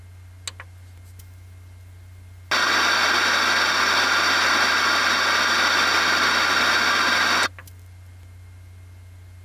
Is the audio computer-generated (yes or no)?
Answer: no